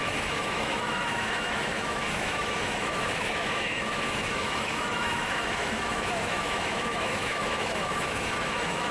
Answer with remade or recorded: remade